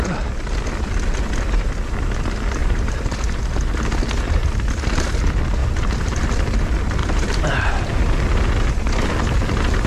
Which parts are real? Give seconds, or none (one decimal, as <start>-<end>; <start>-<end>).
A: 0.0-2.6; 3.4-5.6; 6.2-7.0; 7.7-9.9